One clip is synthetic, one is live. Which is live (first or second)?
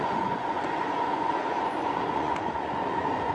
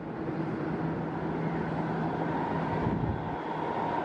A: second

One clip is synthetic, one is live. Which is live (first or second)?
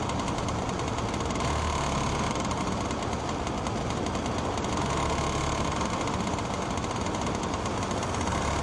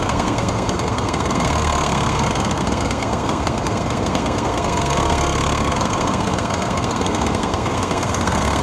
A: first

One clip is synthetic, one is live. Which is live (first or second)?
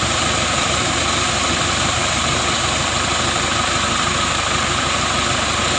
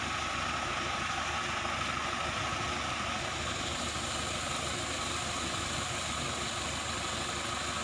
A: second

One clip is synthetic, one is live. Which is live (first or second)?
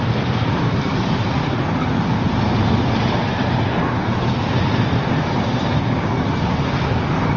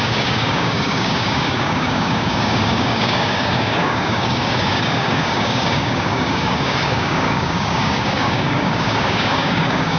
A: first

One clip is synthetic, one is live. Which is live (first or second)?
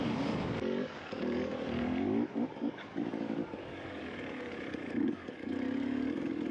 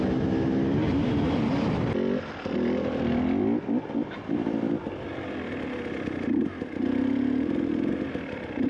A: second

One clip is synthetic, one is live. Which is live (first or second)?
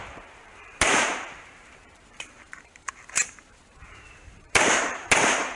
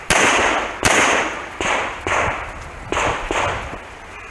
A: second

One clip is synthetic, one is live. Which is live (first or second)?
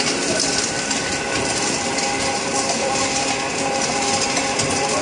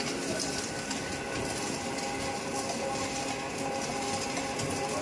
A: second